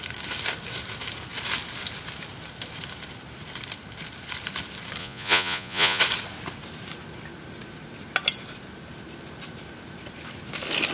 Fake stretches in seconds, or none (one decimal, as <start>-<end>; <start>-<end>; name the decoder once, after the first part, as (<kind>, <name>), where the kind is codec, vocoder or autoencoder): 5.0-6.0 (vocoder, Vocos)